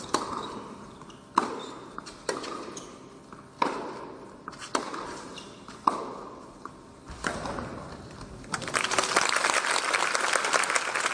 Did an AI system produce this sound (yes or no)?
no